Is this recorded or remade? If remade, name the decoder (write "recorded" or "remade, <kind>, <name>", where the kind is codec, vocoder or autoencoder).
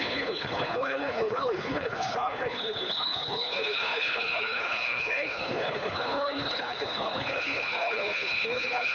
remade, codec, HILCodec